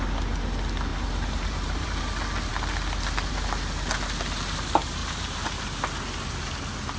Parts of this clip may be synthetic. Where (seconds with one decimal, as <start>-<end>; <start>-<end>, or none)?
0.9-2.0; 5.0-5.6